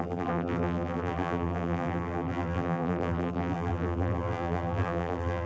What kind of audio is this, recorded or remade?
remade